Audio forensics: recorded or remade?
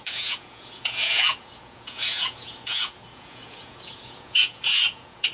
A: remade